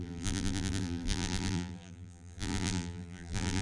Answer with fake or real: fake